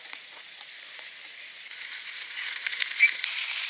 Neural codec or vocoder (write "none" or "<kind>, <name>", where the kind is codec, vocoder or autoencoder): vocoder, Vocos